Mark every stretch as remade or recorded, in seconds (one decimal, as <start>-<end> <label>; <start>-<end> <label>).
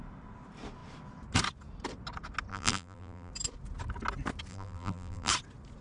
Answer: 0.0-2.5 recorded; 2.5-3.3 remade; 3.3-4.5 recorded; 4.5-5.3 remade; 5.3-5.8 recorded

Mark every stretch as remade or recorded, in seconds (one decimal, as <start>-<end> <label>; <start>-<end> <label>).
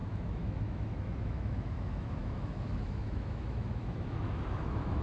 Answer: 0.0-5.0 remade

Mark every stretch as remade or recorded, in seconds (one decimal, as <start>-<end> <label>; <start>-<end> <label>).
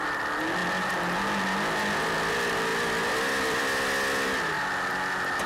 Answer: 0.0-2.7 recorded; 2.7-4.9 remade; 4.9-5.5 recorded